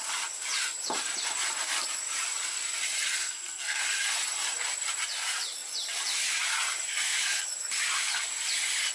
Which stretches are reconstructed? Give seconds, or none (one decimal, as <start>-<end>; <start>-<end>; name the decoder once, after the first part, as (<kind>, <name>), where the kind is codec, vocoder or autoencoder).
3.2-3.8 (codec, SNAC)